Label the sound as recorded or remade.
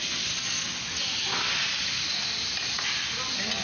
recorded